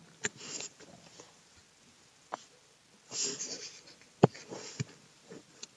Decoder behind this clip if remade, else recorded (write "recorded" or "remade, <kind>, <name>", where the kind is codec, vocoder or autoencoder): recorded